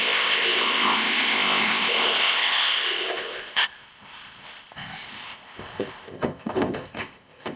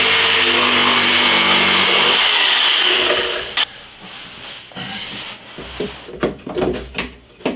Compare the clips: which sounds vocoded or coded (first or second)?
first